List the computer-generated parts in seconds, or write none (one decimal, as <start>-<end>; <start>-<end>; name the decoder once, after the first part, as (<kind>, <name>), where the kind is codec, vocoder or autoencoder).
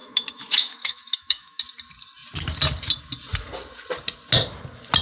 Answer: 0.0-1.6 (autoencoder, DAC-VAE)